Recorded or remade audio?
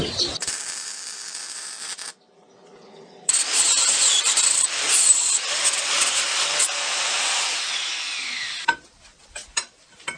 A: remade